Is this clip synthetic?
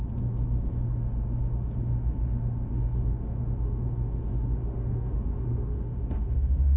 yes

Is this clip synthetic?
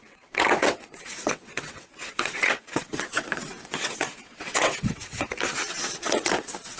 yes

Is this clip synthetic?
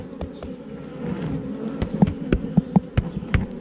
no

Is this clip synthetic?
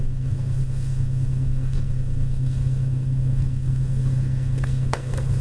yes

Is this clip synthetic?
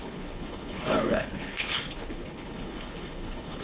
yes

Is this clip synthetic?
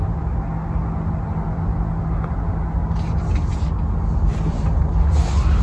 no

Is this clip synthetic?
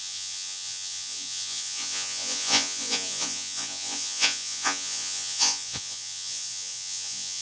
yes